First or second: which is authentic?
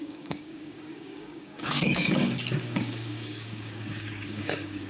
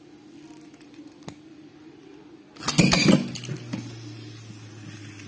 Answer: second